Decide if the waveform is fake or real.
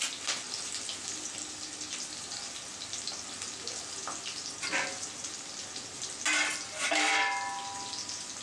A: real